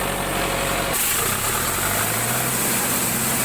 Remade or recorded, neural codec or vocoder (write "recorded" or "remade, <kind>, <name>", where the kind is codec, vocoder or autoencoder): recorded